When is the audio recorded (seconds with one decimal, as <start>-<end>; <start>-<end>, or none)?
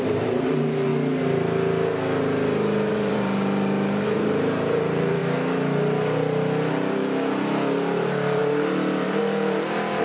0.9-2.9; 5.2-6.7